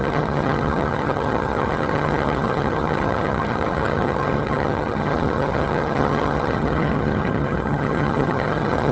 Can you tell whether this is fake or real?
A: fake